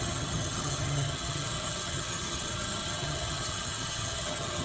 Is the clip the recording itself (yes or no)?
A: no